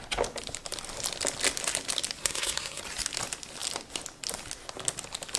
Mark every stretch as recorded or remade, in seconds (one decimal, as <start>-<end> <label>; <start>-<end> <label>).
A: 0.0-2.2 recorded; 2.2-2.8 remade; 2.8-5.4 recorded